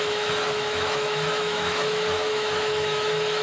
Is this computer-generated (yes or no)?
yes